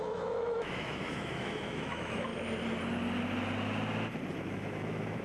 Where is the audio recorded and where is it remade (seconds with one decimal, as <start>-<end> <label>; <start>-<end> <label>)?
0.0-2.3 remade; 2.3-4.4 recorded; 4.4-5.2 remade